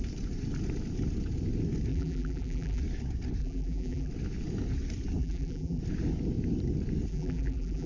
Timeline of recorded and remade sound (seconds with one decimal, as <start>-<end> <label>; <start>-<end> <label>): 0.0-1.9 recorded; 1.9-2.8 remade; 2.8-3.4 recorded; 3.4-4.1 remade; 4.1-5.2 recorded; 5.2-5.8 remade; 5.8-7.1 recorded; 7.1-7.9 remade

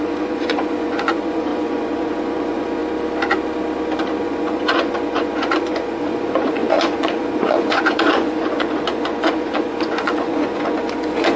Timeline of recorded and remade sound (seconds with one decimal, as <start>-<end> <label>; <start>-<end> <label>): 0.0-2.8 remade; 2.8-4.2 recorded; 4.2-11.4 remade